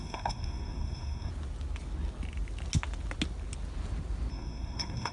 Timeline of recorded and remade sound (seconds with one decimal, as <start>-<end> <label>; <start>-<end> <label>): 0.0-1.3 remade; 1.3-4.3 recorded; 4.3-5.1 remade